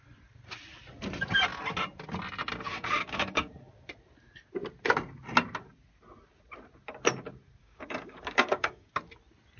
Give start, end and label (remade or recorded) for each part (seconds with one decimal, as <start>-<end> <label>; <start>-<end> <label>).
0.0-2.7 recorded; 2.7-3.5 remade; 3.5-7.6 recorded; 7.6-8.9 remade; 8.9-9.6 recorded